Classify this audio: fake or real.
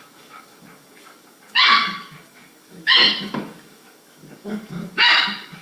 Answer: fake